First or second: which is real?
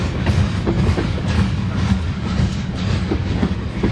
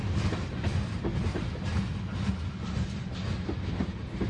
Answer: second